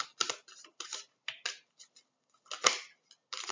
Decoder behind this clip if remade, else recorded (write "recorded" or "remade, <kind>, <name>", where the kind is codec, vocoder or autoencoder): recorded